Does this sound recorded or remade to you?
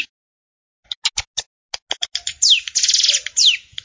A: recorded